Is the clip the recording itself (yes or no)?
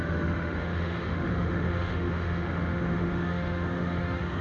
no